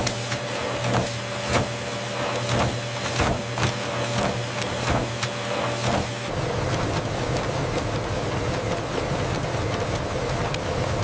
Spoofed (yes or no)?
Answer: no